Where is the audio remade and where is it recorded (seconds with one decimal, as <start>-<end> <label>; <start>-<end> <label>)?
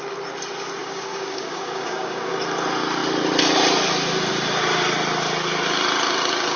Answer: 0.0-0.8 recorded; 0.8-2.3 remade; 2.3-6.6 recorded